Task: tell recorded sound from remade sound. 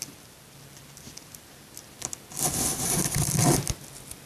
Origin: recorded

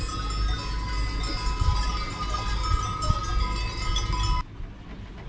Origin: recorded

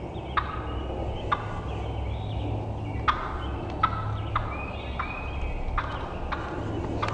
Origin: recorded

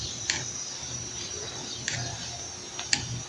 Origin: remade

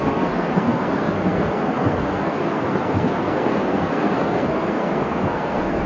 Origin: remade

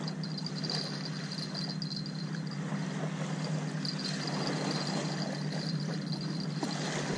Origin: recorded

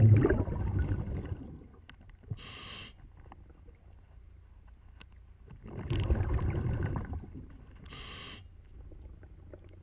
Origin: recorded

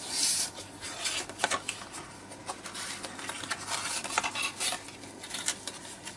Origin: recorded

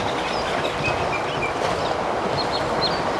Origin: recorded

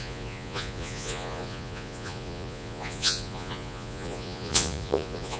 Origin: remade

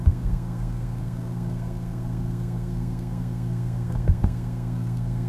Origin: remade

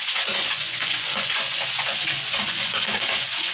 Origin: remade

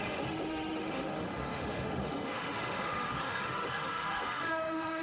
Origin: remade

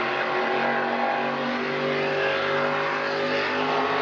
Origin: recorded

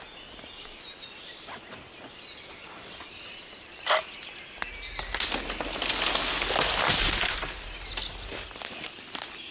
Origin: recorded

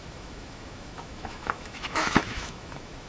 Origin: remade